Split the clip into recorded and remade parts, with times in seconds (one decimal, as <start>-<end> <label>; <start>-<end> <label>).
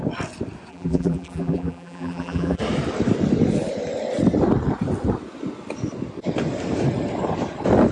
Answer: 0.0-0.7 recorded; 0.7-2.6 remade; 2.6-7.9 recorded